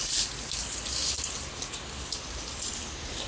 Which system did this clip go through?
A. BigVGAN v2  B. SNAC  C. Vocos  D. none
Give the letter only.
D